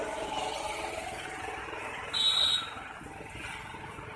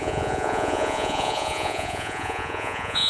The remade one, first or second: second